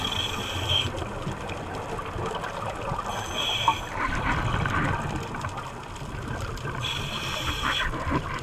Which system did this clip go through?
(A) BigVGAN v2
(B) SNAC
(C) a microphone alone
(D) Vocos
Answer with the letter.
C